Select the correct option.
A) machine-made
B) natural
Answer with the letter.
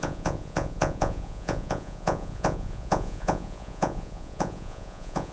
A